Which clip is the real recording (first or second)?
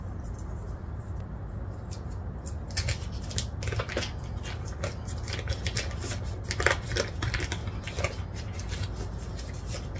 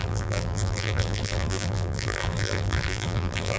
first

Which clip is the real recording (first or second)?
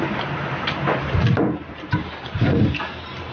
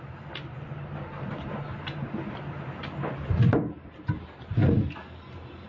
second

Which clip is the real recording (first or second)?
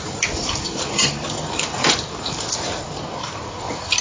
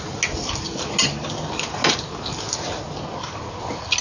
second